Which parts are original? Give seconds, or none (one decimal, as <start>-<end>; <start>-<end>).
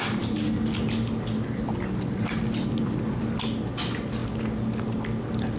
0.0-5.6